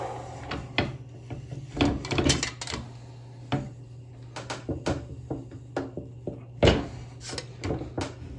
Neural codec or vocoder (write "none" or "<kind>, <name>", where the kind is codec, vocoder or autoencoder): none